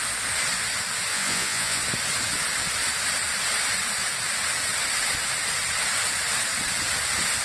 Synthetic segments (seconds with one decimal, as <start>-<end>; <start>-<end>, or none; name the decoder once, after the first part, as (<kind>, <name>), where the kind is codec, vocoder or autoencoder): 1.1-1.8 (vocoder, Vocos)